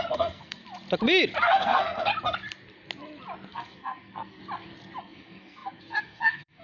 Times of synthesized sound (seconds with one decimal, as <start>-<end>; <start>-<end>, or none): 0.0-0.6; 1.4-2.1; 3.5-4.4; 5.0-6.6